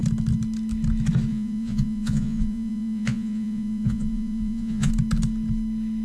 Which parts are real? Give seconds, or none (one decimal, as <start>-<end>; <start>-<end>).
0.0-1.3; 4.9-6.0